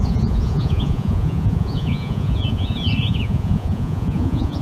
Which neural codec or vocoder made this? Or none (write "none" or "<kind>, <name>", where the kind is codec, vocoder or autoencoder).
vocoder, Vocos